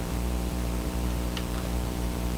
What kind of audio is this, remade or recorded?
remade